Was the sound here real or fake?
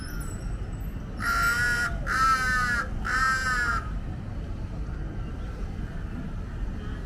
real